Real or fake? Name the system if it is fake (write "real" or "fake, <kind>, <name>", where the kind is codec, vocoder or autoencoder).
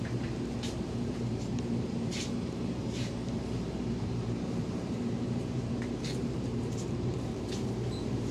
fake, vocoder, BigVGAN v2